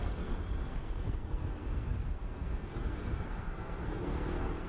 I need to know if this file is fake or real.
fake